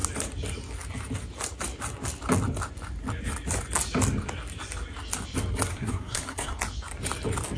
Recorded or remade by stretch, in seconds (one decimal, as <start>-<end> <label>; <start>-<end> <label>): 0.0-5.7 recorded; 5.7-6.6 remade; 6.6-7.6 recorded